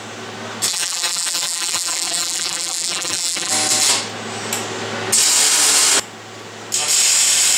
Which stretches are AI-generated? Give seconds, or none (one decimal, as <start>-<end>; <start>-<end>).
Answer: 0.7-3.5